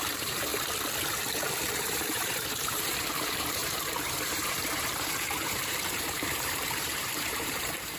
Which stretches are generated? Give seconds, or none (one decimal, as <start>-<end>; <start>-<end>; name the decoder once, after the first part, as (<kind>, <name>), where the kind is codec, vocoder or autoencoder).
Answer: 0.0-0.5 (vocoder, BigVGAN v2); 1.6-8.0